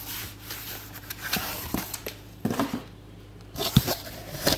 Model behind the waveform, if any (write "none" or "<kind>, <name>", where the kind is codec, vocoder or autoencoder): vocoder, BigVGAN v2